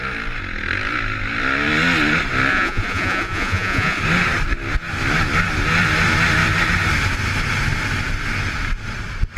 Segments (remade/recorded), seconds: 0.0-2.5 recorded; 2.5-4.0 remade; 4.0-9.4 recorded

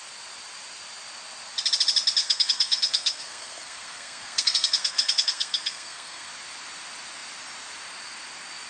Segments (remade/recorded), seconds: 0.0-2.2 recorded; 2.2-6.3 remade; 6.3-8.7 recorded

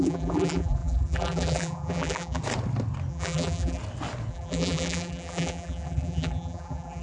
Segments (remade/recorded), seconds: 0.0-2.4 remade; 2.4-3.1 recorded; 3.1-3.8 remade; 3.8-4.3 recorded; 4.3-7.0 remade

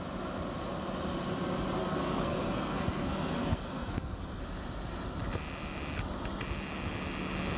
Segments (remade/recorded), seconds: 0.0-1.8 recorded; 1.8-4.4 remade; 4.4-7.6 recorded

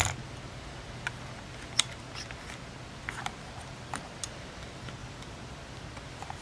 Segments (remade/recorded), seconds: 0.0-5.0 recorded; 5.0-5.8 remade; 5.8-6.4 recorded

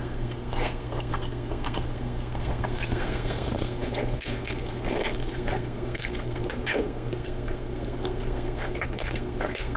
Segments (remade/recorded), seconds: 0.0-9.8 remade

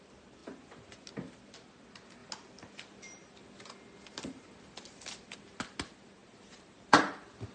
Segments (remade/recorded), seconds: 0.0-6.2 recorded; 6.2-7.1 remade; 7.1-7.5 recorded

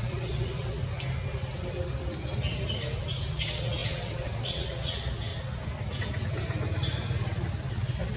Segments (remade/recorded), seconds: 0.0-0.8 remade; 0.8-3.3 recorded; 3.3-5.3 remade; 5.3-7.7 recorded; 7.7-8.2 remade